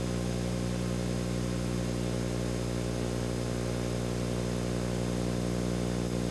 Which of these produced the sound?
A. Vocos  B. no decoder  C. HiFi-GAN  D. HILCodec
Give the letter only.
B